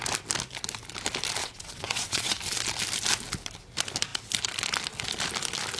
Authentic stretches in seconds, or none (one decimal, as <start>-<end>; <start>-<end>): 0.0-1.4; 2.4-5.8